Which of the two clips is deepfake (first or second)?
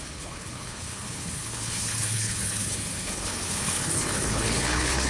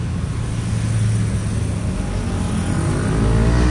first